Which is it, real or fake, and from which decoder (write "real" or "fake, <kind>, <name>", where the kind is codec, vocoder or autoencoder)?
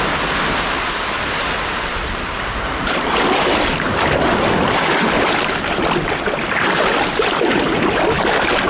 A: real